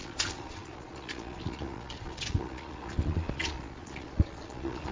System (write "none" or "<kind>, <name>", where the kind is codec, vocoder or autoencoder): vocoder, Vocos